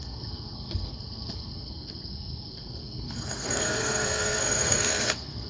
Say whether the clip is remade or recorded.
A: remade